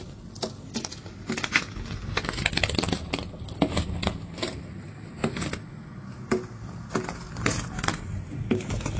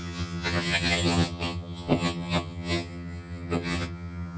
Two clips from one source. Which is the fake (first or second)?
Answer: second